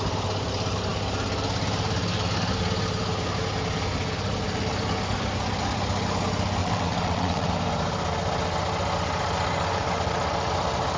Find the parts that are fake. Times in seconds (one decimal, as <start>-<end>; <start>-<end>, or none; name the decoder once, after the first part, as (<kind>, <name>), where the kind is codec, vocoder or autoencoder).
6.6-7.5 (vocoder, WaveNeXt)